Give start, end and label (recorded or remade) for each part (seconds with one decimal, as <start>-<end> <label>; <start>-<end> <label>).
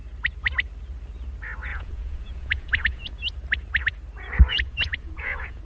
0.0-1.7 recorded; 1.7-3.1 remade; 3.1-4.5 recorded; 4.5-5.6 remade